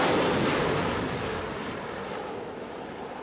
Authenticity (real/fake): real